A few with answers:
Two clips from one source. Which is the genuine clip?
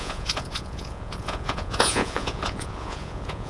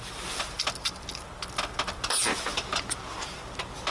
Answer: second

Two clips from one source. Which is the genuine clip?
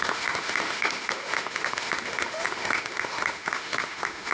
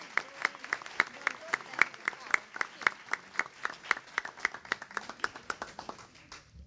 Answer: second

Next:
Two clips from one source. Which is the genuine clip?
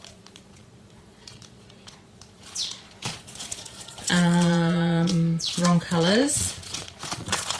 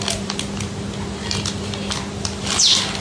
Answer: second